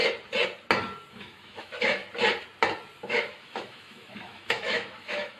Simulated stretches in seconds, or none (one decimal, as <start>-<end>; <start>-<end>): 1.1-2.0; 3.1-5.4